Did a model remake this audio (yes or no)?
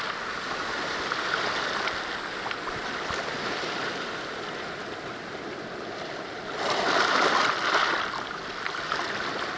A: no